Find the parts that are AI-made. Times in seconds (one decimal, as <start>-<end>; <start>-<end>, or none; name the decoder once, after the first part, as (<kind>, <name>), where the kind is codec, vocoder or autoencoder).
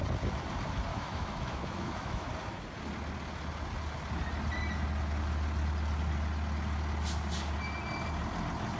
0.9-2.3 (autoencoder, DAC-VAE)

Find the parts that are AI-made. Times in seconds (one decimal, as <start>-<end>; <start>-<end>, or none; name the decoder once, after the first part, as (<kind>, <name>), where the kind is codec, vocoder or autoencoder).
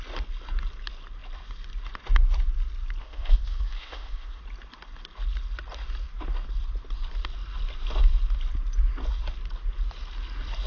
3.0-4.4 (codec, ZipCodec)